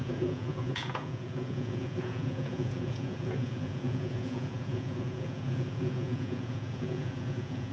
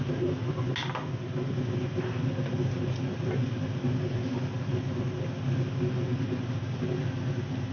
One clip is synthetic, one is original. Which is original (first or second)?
second